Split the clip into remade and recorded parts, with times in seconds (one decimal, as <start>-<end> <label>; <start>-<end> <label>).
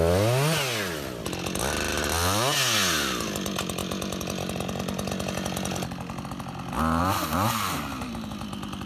0.0-8.9 recorded